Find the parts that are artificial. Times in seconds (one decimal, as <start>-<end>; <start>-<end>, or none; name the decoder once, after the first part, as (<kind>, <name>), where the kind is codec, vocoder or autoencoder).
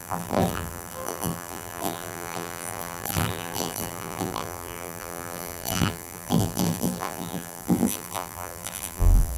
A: 0.0-9.4 (vocoder, BigVGAN v2)